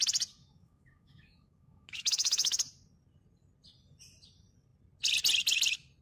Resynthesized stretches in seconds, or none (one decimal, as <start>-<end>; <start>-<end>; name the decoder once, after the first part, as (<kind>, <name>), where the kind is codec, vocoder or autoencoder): 0.4-2.6 (autoencoder, DAC-VAE)